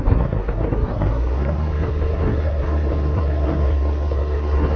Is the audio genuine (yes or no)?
no